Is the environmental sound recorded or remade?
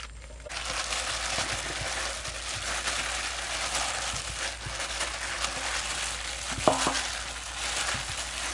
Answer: recorded